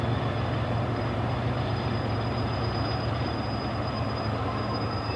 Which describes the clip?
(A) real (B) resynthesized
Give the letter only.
B